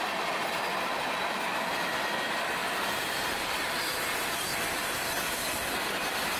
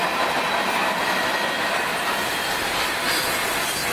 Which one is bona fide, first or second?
second